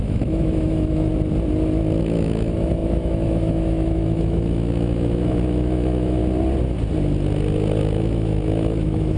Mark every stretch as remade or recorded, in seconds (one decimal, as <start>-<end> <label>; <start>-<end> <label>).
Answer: 0.0-1.1 remade; 1.1-2.0 recorded; 2.0-6.2 remade; 6.2-7.8 recorded; 7.8-9.2 remade